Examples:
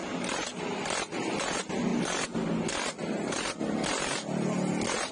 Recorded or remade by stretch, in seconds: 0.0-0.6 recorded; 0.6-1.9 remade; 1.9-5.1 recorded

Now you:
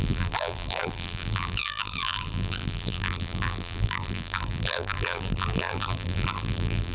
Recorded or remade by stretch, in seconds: 0.0-6.9 remade

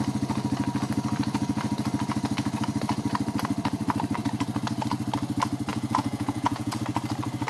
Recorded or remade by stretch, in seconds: 0.0-5.7 recorded; 5.7-6.8 remade; 6.8-7.5 recorded

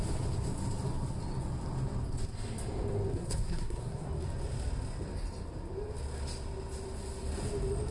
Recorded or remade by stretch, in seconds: 0.0-3.1 recorded; 3.1-4.1 remade; 4.1-7.9 recorded